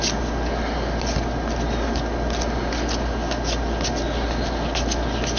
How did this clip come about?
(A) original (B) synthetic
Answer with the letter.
A